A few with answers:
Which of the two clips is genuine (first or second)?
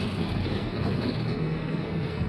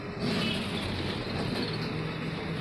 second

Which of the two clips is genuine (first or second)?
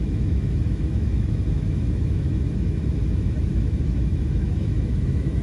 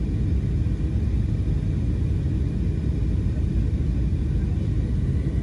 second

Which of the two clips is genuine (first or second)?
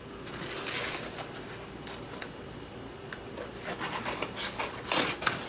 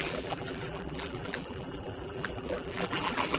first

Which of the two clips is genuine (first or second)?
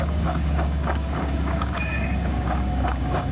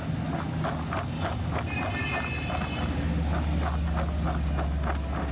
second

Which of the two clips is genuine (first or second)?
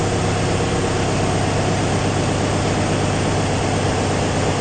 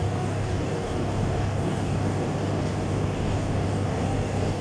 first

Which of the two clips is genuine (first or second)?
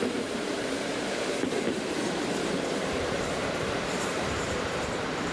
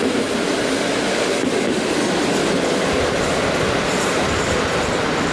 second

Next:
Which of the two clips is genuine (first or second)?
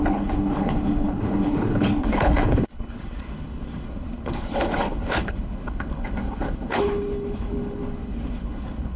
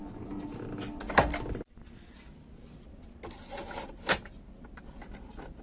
second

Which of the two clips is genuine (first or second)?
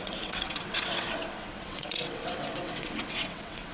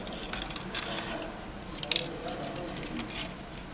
second